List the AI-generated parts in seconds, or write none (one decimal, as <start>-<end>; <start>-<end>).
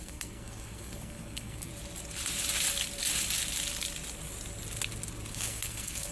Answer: 0.0-1.7; 5.3-6.1